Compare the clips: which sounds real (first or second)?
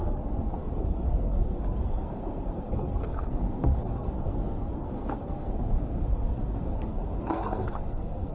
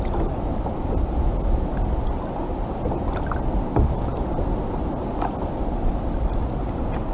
second